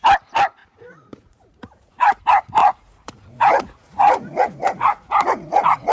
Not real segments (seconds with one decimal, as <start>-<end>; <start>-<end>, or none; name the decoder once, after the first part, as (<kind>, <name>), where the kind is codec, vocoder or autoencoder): 0.6-2.2 (vocoder, Vocos); 2.6-5.9